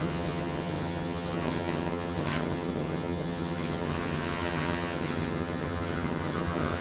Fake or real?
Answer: fake